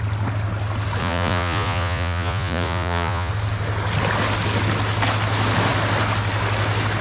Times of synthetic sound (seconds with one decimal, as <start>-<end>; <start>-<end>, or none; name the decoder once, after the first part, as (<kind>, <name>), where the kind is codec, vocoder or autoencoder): 1.0-3.3 (vocoder, Vocos)